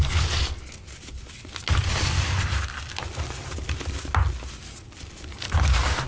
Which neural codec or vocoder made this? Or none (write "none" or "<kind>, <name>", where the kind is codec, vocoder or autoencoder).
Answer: none